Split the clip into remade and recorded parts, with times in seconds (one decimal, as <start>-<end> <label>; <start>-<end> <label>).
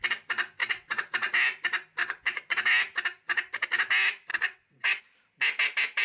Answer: 0.0-0.6 recorded; 0.6-1.3 remade; 1.3-2.0 recorded; 2.0-2.6 remade; 2.6-4.3 recorded; 4.3-5.0 remade; 5.0-6.0 recorded